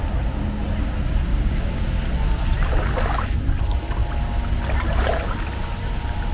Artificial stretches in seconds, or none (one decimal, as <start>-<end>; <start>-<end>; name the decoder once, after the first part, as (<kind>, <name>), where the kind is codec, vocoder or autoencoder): 1.3-2.1 (codec, DAC)